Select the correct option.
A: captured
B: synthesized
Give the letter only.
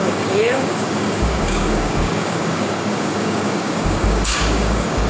B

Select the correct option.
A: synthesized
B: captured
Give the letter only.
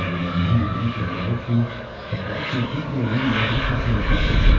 A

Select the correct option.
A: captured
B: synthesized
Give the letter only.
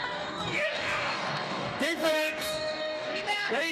B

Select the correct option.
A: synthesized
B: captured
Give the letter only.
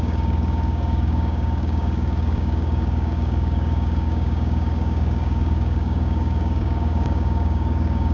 A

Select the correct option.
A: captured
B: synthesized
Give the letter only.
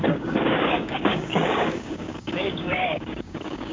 B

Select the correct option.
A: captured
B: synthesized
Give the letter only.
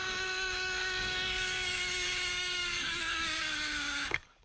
B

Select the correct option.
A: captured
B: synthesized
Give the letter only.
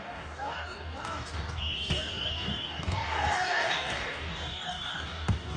B